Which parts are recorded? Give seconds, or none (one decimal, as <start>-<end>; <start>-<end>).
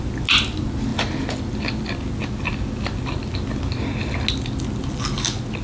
0.0-5.6